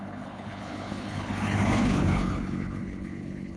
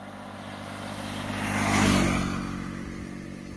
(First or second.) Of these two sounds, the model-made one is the first